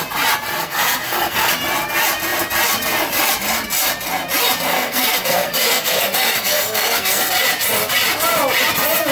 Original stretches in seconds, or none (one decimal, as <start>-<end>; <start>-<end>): 0.0-0.6; 1.5-4.7; 7.3-9.1